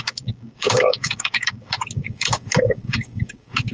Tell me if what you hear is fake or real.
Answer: fake